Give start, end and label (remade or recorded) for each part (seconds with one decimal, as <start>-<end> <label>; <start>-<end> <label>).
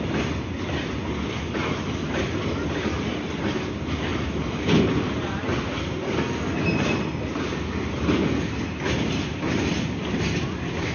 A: 0.0-4.1 recorded; 4.1-5.6 remade; 5.6-10.9 recorded